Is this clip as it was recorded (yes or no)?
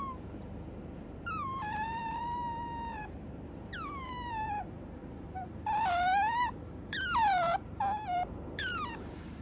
no